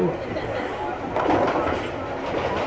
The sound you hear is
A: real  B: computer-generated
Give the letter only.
A